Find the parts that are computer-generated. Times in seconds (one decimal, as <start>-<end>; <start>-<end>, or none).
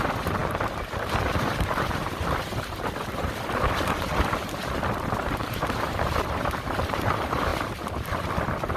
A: 0.0-8.8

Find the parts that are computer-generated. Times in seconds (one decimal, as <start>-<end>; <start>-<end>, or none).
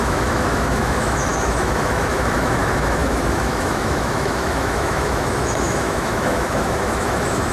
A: 0.0-7.5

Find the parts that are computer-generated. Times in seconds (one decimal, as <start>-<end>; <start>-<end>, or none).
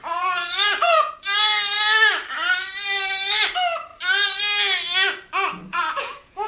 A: 0.0-1.1; 5.7-6.5